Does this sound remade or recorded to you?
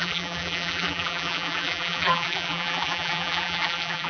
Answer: remade